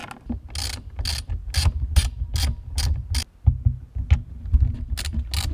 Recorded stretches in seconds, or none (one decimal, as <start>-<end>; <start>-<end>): 0.0-5.5